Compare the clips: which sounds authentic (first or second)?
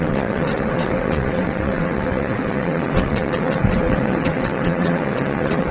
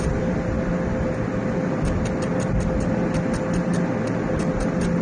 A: second